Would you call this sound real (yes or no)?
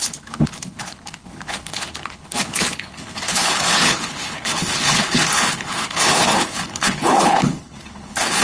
no